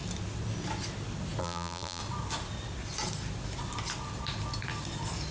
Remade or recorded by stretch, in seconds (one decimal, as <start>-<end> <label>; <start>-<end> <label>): 0.0-1.4 recorded; 1.4-2.0 remade; 2.0-5.3 recorded